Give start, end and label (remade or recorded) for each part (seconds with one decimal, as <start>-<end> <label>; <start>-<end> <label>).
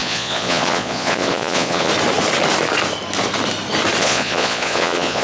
0.0-1.9 remade; 1.9-4.0 recorded; 4.0-5.2 remade